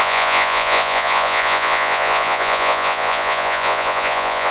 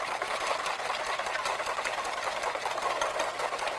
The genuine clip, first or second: second